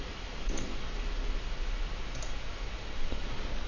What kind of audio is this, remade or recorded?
recorded